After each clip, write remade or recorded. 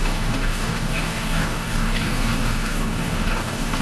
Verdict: remade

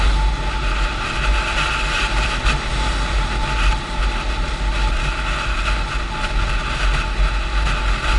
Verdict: recorded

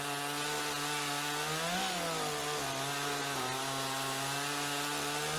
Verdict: recorded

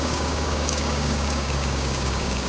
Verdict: remade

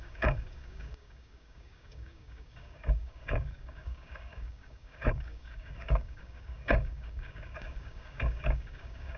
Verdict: remade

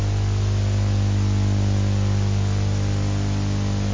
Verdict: recorded